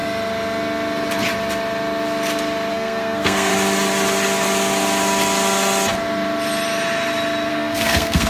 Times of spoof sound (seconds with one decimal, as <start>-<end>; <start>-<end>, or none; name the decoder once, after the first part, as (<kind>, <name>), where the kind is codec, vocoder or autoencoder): 2.7-3.5 (codec, SNAC); 7.5-8.3